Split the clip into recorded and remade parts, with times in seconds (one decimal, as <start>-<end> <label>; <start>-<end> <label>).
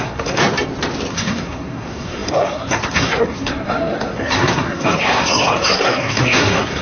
0.0-0.4 remade; 0.4-1.1 recorded; 1.1-6.8 remade